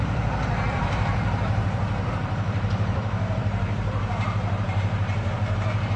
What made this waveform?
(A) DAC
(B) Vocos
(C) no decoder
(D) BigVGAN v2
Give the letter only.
D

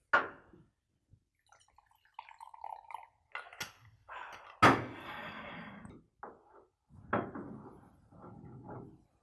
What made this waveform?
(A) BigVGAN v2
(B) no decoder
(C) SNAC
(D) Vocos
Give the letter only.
B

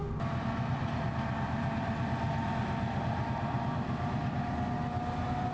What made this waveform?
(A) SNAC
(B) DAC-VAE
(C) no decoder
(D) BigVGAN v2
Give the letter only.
C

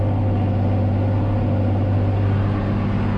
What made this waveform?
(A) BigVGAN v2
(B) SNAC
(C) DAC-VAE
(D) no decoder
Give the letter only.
D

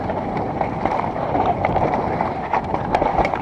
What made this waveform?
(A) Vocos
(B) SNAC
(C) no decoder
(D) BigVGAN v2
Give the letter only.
D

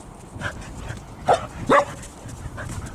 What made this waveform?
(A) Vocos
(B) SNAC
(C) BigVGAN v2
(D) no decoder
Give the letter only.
D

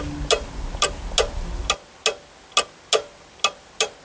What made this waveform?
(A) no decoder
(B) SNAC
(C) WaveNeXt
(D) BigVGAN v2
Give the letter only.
A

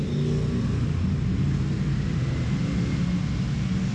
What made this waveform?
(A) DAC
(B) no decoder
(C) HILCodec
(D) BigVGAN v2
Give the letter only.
B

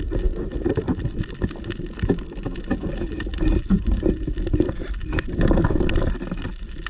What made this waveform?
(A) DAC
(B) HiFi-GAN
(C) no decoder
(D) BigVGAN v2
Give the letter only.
C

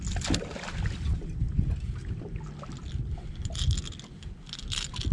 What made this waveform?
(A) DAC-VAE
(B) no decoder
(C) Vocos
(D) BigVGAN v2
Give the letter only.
B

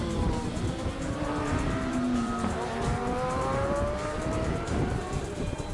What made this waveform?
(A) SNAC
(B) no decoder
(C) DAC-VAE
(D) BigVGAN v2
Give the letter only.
D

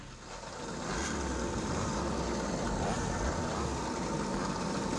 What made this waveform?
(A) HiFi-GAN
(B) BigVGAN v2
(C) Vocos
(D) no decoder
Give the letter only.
D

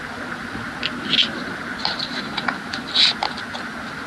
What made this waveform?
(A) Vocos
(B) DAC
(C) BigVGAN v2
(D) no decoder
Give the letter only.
D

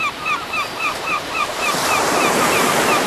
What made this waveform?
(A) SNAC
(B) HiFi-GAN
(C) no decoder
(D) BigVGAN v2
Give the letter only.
D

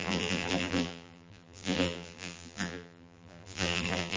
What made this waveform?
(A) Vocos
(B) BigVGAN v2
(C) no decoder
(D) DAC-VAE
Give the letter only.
B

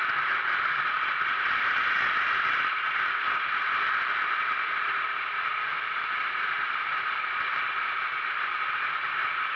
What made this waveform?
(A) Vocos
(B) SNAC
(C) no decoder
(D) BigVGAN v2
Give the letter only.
D